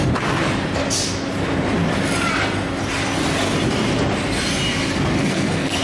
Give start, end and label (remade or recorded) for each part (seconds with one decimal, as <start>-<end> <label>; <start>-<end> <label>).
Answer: 0.0-5.2 recorded; 5.2-5.8 remade